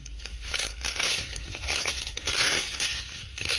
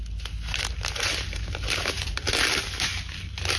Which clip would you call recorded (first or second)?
second